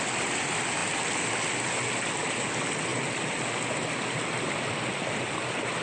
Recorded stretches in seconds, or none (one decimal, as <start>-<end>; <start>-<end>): 0.0-5.8